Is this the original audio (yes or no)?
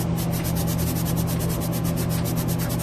yes